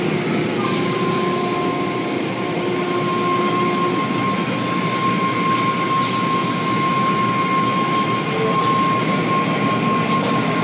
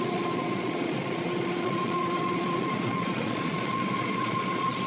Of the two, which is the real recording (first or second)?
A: first